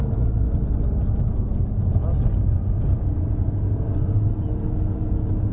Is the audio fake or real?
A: real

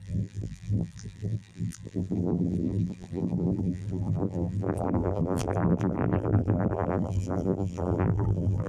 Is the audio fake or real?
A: fake